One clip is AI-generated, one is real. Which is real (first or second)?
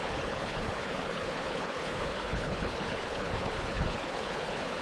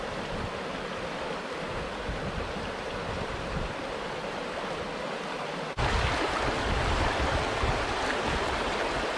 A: second